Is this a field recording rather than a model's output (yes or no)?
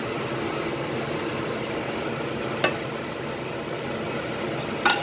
yes